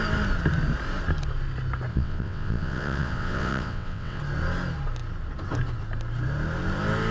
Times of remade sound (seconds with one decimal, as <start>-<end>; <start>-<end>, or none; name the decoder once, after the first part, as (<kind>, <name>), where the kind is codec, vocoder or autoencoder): 1.9-4.2 (vocoder, WaveNeXt)